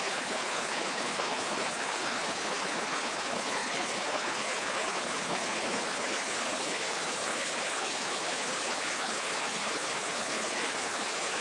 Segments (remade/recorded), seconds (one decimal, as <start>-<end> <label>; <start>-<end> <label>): 0.0-11.4 remade